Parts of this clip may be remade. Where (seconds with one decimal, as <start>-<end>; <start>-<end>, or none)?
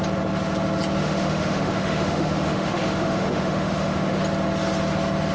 1.0-4.2